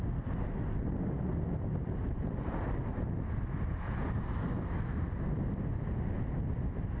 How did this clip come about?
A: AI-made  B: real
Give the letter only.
B